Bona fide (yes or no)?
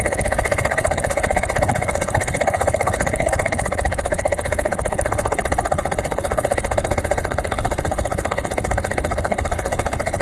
no